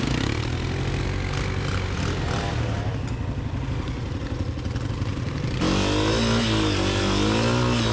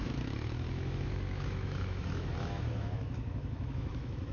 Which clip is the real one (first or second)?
first